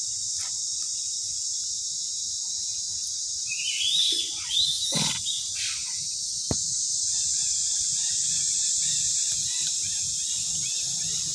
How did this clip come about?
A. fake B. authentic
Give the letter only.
B